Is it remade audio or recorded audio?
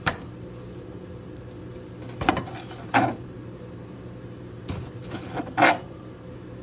remade